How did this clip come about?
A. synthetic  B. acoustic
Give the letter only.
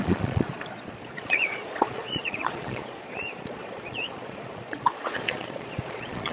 A